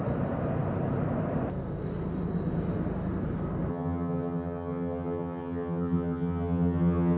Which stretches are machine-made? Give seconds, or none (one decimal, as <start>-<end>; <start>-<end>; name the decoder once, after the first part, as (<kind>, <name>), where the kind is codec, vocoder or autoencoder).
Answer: 3.7-7.2 (vocoder, HiFi-GAN)